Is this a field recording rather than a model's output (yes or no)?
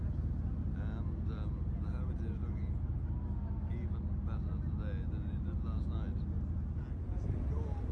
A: yes